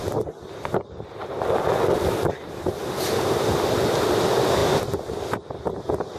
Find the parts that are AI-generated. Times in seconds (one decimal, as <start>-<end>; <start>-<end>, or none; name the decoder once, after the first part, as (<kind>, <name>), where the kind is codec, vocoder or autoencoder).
none